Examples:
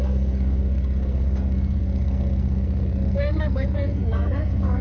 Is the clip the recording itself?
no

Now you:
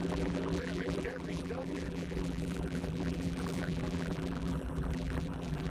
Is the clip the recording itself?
no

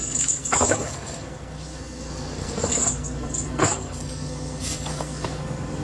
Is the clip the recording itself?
no